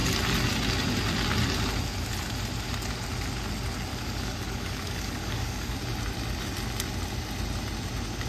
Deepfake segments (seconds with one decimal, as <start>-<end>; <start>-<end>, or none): 3.9-5.8